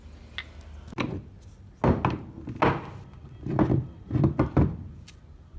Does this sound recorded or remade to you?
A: recorded